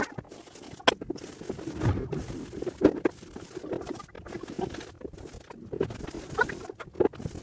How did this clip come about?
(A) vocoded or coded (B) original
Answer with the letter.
B